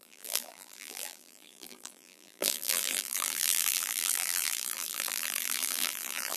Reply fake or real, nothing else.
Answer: fake